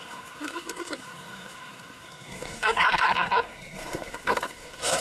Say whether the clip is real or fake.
fake